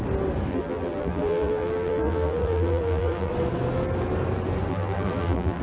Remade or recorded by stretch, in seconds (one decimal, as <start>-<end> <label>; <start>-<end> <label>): 0.0-0.5 recorded; 0.5-3.3 remade; 3.3-4.7 recorded; 4.7-5.6 remade